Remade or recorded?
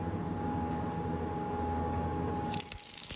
remade